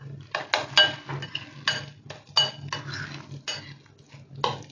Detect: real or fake real